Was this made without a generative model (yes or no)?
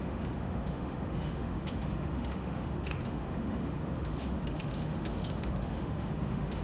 no